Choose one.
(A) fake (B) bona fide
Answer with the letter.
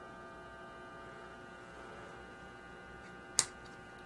B